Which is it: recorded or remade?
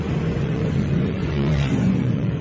remade